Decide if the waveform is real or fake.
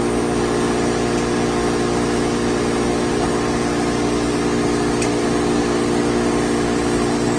real